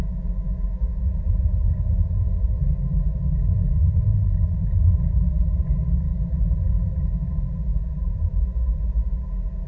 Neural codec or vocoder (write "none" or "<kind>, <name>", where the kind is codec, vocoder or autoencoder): none